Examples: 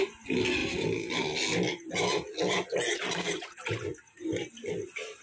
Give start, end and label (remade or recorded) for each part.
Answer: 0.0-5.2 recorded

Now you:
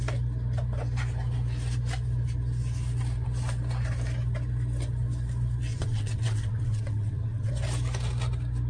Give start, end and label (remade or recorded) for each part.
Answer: 0.0-5.7 recorded; 5.7-7.5 remade; 7.5-8.7 recorded

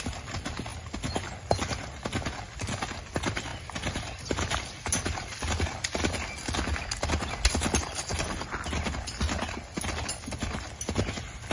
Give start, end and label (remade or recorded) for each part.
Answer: 0.0-11.5 recorded